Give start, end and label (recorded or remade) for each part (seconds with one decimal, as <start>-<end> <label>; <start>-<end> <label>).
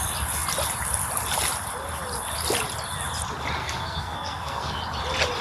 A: 0.0-3.6 recorded; 3.6-4.8 remade; 4.8-5.4 recorded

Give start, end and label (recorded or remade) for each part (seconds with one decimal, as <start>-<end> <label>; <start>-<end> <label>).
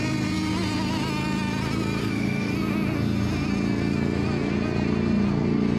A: 0.0-2.0 recorded; 2.0-2.5 remade; 2.5-5.8 recorded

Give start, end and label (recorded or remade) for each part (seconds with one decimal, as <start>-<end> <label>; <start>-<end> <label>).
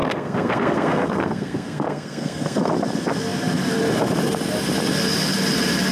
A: 0.0-2.7 remade; 2.7-5.9 recorded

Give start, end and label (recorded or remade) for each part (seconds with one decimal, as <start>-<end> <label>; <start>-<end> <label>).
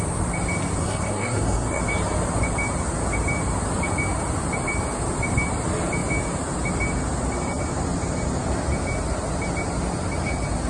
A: 0.0-0.8 recorded; 0.8-1.8 remade; 1.8-10.7 recorded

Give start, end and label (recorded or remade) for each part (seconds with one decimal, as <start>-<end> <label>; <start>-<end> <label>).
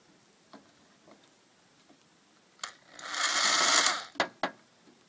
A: 0.0-5.1 recorded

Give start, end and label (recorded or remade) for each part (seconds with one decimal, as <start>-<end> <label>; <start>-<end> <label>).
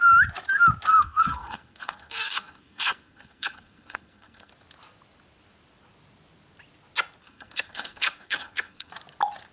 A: 0.0-0.9 recorded; 0.9-4.5 remade; 4.5-7.2 recorded; 7.2-8.9 remade; 8.9-9.5 recorded